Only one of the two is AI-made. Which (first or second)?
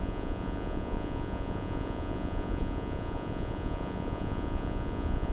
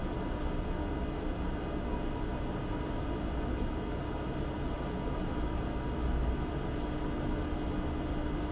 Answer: first